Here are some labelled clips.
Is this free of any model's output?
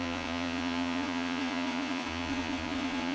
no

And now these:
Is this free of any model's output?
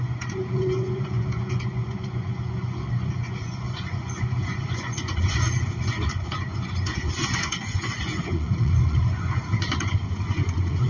no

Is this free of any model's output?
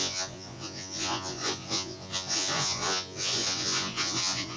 no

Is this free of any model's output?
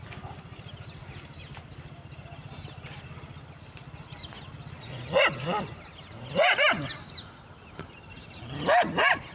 yes